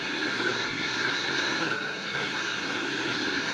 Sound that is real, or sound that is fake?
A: fake